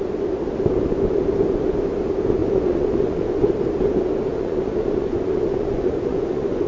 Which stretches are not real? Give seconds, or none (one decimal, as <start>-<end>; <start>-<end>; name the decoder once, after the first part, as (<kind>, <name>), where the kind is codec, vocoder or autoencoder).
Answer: 2.4-3.5 (vocoder, Vocos); 4.3-6.7